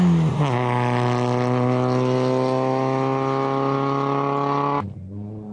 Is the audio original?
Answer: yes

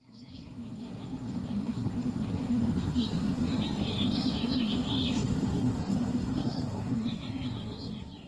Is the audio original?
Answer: no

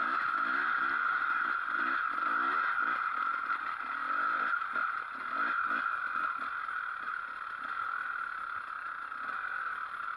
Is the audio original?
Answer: yes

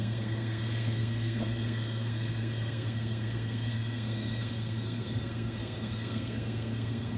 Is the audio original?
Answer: no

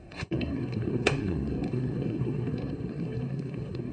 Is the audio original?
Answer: no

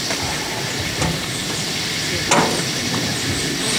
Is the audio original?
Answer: yes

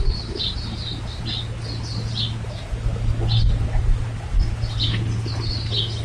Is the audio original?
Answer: yes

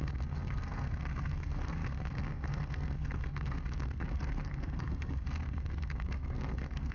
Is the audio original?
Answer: no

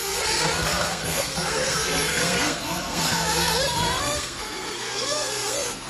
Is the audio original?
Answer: no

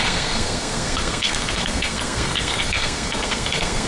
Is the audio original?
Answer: no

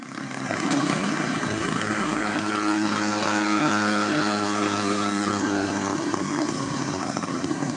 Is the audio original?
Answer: no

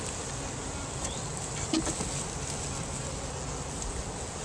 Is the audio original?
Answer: yes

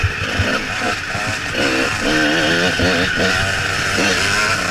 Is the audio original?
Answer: yes